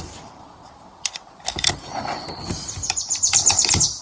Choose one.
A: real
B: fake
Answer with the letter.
B